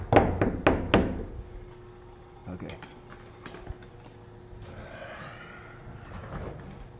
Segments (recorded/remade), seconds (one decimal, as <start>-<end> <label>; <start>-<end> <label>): 0.0-7.0 recorded

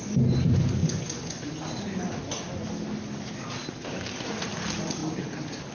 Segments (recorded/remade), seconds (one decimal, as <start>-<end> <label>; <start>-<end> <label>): 0.0-0.8 recorded; 0.8-1.5 remade; 1.5-5.7 recorded